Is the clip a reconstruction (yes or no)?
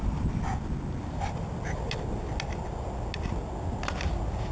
no